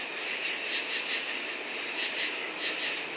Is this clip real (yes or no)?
yes